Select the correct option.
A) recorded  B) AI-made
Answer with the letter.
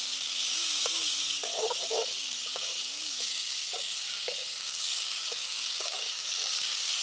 B